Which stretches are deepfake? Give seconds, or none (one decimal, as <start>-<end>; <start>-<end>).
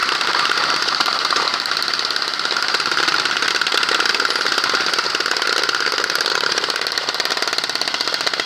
0.0-3.5; 6.3-7.3